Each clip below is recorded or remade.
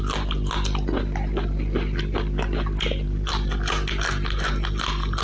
recorded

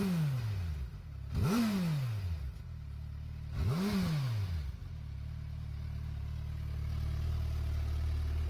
recorded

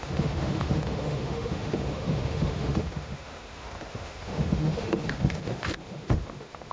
remade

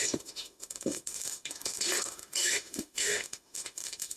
remade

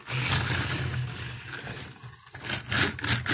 recorded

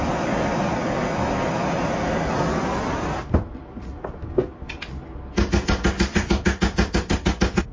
recorded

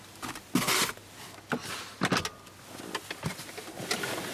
recorded